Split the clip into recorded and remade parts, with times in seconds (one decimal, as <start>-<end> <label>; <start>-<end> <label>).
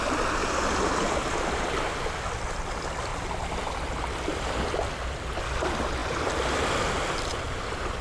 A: 0.0-0.4 recorded; 0.4-1.8 remade; 1.8-3.1 recorded; 3.1-5.4 remade; 5.4-6.0 recorded; 6.0-8.0 remade